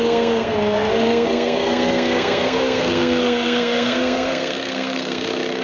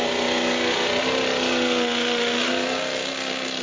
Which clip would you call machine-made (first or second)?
first